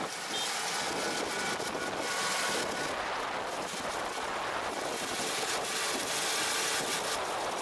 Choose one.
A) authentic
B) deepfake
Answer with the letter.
A